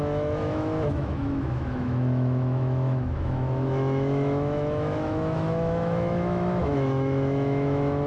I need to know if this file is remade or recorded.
remade